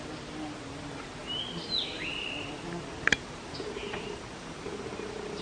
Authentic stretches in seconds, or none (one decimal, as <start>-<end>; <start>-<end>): 0.0-5.4